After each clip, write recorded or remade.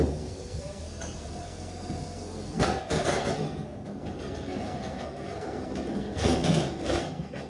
remade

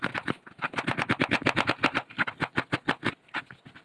recorded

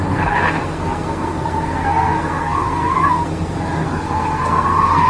remade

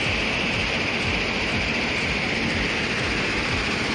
recorded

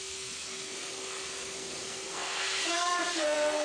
remade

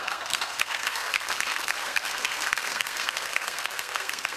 remade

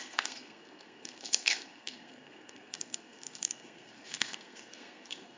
remade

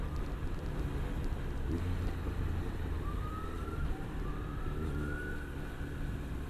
recorded